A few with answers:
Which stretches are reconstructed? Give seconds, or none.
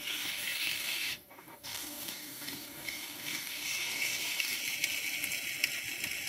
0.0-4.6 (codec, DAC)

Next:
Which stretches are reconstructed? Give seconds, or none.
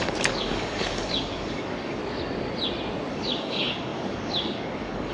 0.0-2.0 (codec, DAC); 3.1-5.1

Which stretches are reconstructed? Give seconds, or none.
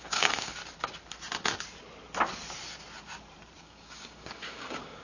0.0-0.6 (codec, DAC); 3.6-5.0